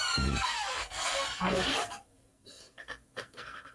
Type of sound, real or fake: fake